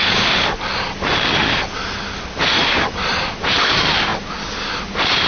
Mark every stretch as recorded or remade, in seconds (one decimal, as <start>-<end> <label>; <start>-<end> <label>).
0.0-5.3 recorded

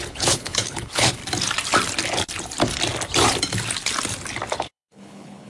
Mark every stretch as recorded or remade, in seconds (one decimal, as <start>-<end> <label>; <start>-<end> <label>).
0.0-1.2 remade; 1.2-4.5 recorded; 4.5-5.5 remade

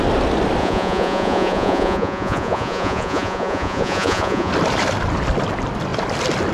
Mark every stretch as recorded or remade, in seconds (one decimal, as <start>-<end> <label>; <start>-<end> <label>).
0.0-0.6 recorded; 0.6-4.5 remade; 4.5-6.5 recorded

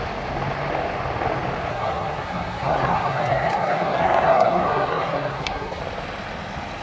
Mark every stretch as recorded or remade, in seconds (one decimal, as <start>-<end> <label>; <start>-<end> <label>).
0.0-1.7 recorded; 1.7-5.8 remade; 5.8-6.8 recorded

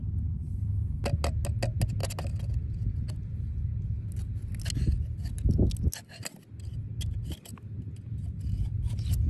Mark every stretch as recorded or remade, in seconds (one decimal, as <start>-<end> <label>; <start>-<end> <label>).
0.0-1.0 remade; 1.0-9.3 recorded

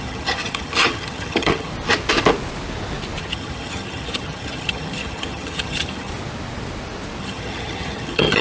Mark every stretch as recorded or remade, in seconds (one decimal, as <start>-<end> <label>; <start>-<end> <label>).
0.0-1.7 remade; 1.7-3.2 recorded; 3.2-6.1 remade; 6.1-7.2 recorded; 7.2-8.4 remade

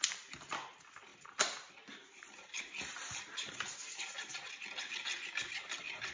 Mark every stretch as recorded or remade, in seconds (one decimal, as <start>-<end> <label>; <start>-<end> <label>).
0.0-6.1 recorded

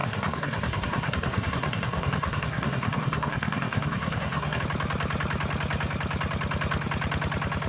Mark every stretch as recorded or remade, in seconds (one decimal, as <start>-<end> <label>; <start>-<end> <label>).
0.0-4.6 remade; 4.6-7.7 recorded